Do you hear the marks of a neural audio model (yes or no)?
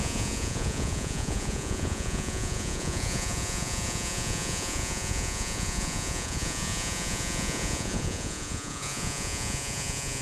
yes